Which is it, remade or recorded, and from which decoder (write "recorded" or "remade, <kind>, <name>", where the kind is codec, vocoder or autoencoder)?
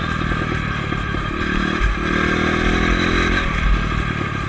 recorded